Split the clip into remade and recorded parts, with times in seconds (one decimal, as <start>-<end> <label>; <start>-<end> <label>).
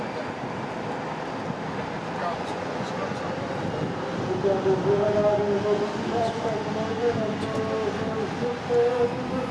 0.0-2.2 recorded; 2.2-3.2 remade; 3.2-9.5 recorded